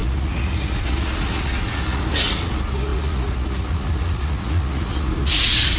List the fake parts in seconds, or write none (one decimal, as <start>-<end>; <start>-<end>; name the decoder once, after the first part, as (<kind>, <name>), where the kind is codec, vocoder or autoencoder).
0.0-5.8 (vocoder, Vocos)